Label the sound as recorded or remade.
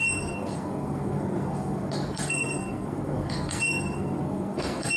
remade